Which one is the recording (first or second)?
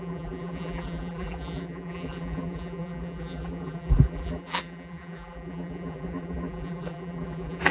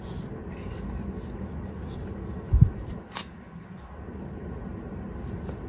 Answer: second